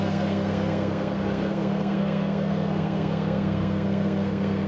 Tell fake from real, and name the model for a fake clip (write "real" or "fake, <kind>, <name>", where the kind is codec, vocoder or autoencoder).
fake, codec, SNAC